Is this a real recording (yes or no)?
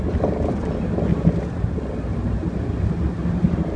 yes